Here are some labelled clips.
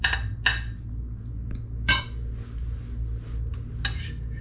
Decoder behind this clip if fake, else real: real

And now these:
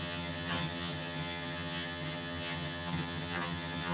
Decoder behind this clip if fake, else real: fake, vocoder, HiFi-GAN